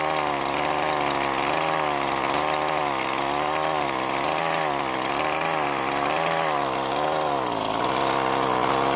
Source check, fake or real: real